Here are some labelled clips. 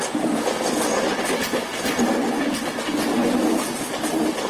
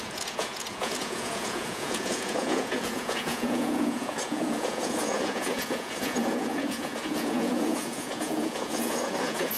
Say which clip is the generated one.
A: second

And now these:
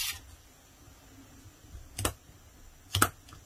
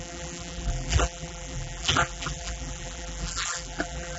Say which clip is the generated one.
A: second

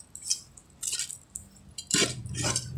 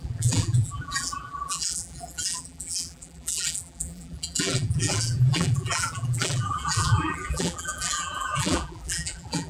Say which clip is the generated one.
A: second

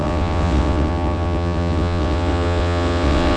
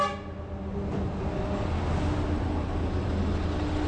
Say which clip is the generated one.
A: first